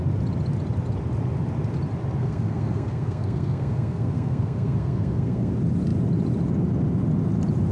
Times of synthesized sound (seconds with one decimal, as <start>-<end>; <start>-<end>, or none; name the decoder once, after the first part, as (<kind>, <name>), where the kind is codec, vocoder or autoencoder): 2.2-5.5 (codec, SNAC)